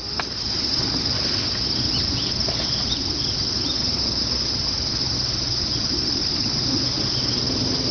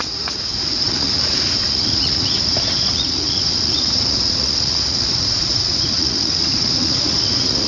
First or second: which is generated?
second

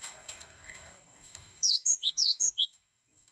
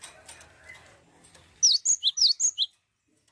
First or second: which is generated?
first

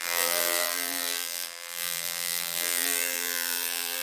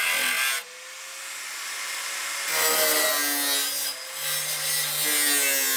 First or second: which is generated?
first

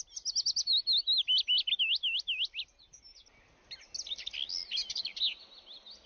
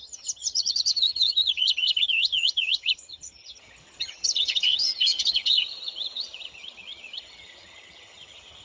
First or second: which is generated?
second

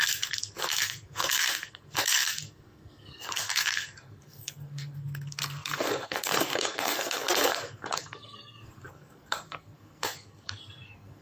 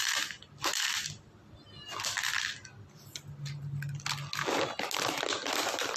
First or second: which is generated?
first